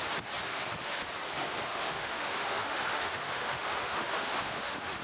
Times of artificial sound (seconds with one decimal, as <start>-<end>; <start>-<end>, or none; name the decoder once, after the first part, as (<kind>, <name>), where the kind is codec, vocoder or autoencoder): 0.5-1.1 (autoencoder, DAC-VAE); 1.7-5.0